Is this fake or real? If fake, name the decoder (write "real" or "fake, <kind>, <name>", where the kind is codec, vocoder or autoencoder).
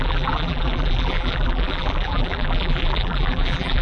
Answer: fake, vocoder, BigVGAN v2